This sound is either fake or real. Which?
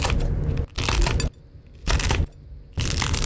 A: real